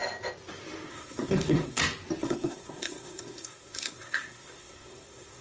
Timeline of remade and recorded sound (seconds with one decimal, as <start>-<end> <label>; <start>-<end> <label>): 0.0-0.9 recorded; 0.9-1.8 remade; 1.8-2.2 recorded; 2.2-5.4 remade